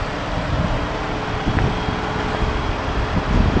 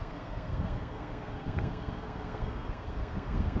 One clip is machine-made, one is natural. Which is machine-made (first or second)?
second